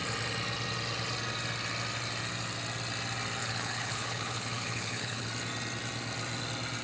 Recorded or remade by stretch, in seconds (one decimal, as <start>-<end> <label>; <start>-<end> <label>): 0.0-3.4 recorded; 3.4-5.3 remade; 5.3-6.8 recorded

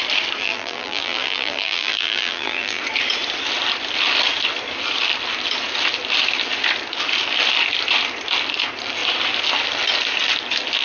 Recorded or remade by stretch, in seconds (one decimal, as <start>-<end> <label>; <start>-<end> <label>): 0.0-0.4 recorded; 0.4-2.8 remade; 2.8-10.8 recorded

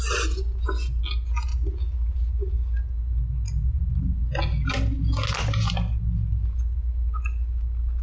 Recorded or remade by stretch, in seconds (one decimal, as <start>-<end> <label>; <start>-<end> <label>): 0.0-8.0 recorded

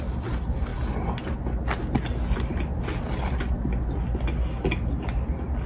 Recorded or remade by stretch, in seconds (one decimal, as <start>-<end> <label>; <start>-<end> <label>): 0.0-5.7 recorded

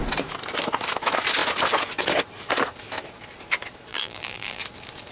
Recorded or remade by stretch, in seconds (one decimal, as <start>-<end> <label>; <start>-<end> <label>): 0.0-3.9 recorded; 3.9-4.6 remade; 4.6-5.1 recorded

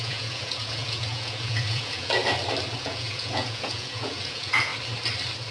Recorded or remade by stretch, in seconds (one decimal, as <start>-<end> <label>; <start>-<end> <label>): 0.0-2.2 remade; 2.2-2.8 recorded; 2.8-4.7 remade; 4.7-5.5 recorded